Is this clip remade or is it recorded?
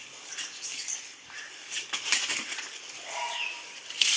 remade